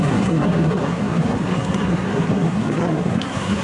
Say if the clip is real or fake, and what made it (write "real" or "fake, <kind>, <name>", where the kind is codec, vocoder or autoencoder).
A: fake, codec, SNAC